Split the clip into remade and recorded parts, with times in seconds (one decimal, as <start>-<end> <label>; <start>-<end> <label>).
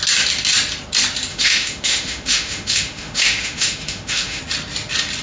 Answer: 0.0-1.3 recorded; 1.3-4.4 remade; 4.4-5.2 recorded